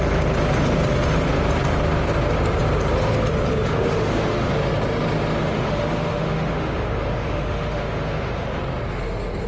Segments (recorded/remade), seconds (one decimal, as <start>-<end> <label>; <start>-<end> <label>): 0.0-3.7 recorded; 3.7-4.5 remade; 4.5-5.4 recorded; 5.4-8.6 remade; 8.6-9.5 recorded